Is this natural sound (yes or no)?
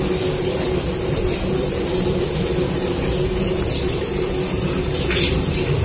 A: yes